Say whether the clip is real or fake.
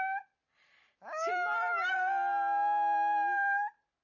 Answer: real